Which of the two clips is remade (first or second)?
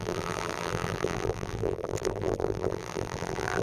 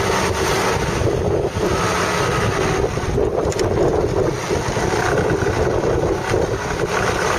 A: first